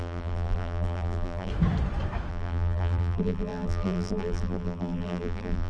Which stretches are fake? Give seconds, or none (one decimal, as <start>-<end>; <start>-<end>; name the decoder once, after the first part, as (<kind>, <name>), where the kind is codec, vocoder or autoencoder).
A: 0.0-1.5 (vocoder, BigVGAN v2); 2.3-5.7